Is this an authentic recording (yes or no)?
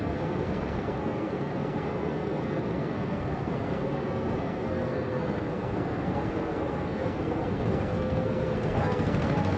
no